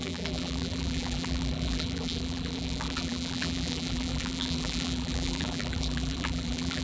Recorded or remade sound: remade